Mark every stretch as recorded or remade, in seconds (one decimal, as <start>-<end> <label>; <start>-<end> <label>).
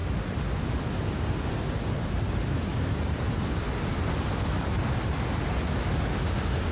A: 0.0-6.7 recorded